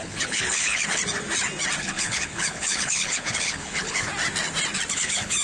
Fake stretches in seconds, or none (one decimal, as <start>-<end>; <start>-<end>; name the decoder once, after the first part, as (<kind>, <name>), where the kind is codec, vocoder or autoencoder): 0.0-1.0 (codec, HILCodec); 1.8-4.1; 4.9-5.4

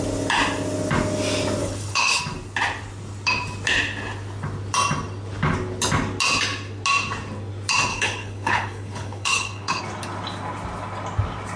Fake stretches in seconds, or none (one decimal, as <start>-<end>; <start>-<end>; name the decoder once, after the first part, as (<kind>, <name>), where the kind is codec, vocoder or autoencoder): 1.6-2.2 (codec, HILCodec); 7.9-9.8

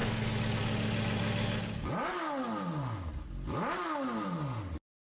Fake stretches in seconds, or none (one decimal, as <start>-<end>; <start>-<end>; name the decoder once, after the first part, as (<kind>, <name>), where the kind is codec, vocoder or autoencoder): none

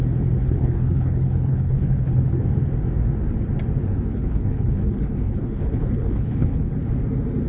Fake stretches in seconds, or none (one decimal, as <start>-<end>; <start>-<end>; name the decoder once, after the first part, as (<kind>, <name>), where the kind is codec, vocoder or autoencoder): 0.4-2.4 (codec, HILCodec); 4.1-6.9

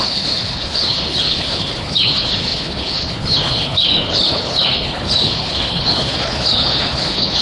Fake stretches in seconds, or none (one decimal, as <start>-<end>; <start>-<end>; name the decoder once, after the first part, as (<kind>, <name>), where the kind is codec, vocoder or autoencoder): 0.0-7.4 (codec, HILCodec)

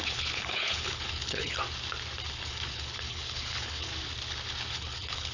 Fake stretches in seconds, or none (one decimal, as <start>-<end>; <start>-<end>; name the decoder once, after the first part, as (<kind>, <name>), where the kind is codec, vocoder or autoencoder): 0.0-1.6 (codec, HILCodec); 2.3-3.9; 4.7-5.3

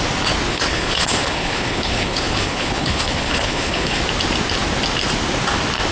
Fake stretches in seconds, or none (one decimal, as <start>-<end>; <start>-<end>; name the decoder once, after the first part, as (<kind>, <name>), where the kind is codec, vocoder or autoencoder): 0.5-4.0 (codec, HILCodec)